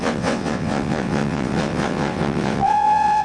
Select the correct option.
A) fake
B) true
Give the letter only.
A